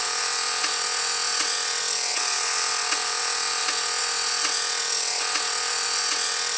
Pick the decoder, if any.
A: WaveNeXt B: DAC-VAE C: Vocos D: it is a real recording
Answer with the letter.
A